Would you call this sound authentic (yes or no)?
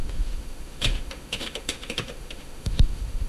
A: no